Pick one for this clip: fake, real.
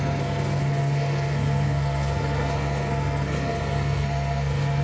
fake